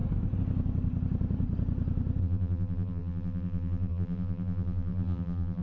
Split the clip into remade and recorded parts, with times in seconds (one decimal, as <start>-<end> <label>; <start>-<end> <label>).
0.0-2.2 recorded; 2.2-5.6 remade